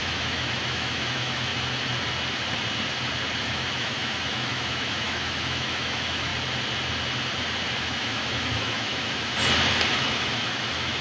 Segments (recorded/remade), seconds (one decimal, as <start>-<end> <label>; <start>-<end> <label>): 0.0-1.5 remade; 1.5-3.4 recorded; 3.4-6.3 remade; 6.3-7.8 recorded; 7.8-9.3 remade; 9.3-9.9 recorded; 9.9-11.0 remade